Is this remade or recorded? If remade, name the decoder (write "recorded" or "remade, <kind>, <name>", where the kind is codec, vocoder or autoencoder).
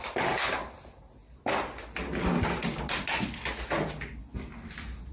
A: recorded